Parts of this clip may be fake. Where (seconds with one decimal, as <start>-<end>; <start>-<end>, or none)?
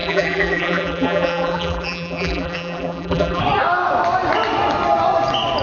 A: 0.0-3.4